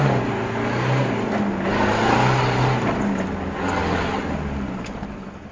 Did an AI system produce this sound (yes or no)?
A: no